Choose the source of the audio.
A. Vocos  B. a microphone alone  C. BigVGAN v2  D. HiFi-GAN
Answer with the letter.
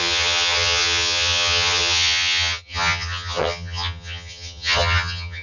D